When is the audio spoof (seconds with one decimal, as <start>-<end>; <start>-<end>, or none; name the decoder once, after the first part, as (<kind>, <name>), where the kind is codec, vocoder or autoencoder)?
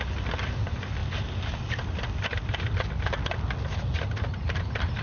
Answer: none